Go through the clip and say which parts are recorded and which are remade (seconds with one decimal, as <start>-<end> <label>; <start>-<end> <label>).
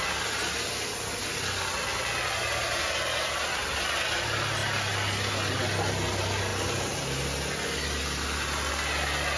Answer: 0.0-9.4 recorded